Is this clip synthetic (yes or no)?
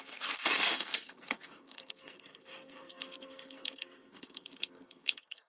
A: yes